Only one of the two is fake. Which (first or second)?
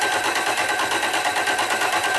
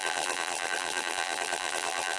second